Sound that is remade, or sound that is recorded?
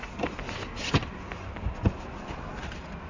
recorded